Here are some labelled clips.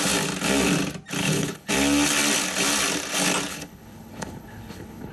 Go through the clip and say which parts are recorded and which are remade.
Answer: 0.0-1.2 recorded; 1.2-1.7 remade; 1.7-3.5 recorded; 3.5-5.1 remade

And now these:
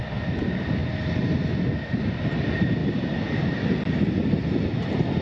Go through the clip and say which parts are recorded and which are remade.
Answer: 0.0-5.2 recorded